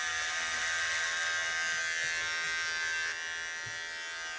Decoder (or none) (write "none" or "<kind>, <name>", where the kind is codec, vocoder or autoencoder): none